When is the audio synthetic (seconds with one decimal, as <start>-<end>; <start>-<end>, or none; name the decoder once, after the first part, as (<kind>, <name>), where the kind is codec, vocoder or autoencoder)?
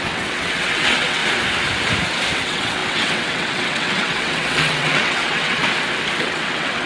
0.0-1.2 (vocoder, WaveNeXt); 2.4-5.6; 6.2-6.9